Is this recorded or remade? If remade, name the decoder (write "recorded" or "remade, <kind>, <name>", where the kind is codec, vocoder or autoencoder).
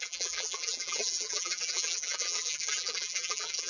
remade, vocoder, BigVGAN v2